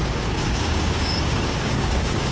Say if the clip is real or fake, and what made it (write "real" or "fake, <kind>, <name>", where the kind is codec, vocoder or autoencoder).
fake, codec, DAC